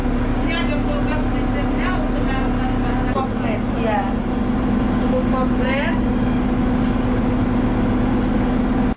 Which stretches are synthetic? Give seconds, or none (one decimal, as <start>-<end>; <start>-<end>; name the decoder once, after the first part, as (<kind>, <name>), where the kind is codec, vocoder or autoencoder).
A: none